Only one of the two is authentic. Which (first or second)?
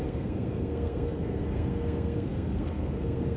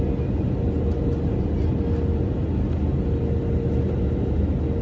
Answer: second